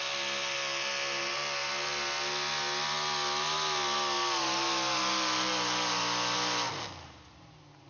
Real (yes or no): yes